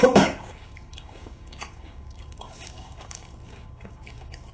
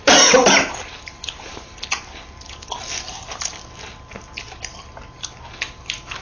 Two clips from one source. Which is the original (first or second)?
second